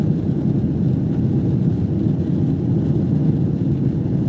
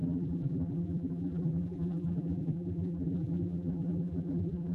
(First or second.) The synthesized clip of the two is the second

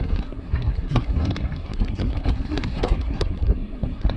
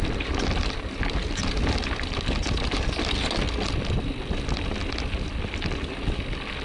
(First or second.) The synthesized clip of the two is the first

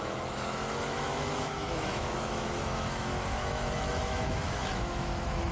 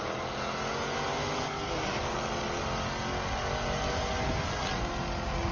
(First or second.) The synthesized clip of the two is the first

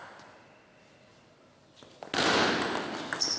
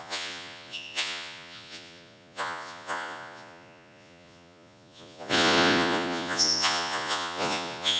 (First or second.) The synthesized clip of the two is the second